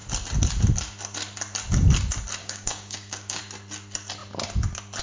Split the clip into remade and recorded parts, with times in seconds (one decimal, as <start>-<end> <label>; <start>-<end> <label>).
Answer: 0.0-2.4 recorded; 2.4-3.4 remade; 3.4-5.0 recorded